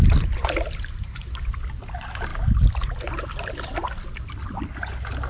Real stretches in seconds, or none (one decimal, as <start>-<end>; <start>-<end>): 0.0-5.3

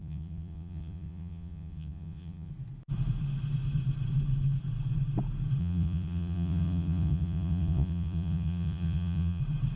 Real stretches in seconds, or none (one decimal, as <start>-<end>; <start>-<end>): 2.5-5.6; 9.4-9.8

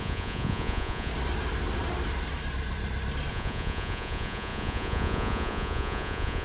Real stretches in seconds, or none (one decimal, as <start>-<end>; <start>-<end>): 1.1-3.3

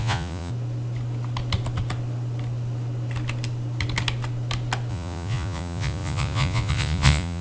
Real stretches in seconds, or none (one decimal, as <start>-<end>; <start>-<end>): 0.5-4.9

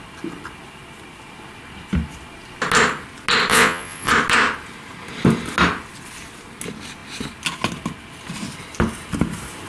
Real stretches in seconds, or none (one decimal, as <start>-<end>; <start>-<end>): 0.0-3.5; 4.1-9.7

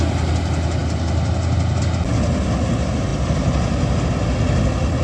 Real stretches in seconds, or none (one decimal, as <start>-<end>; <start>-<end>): 0.0-5.0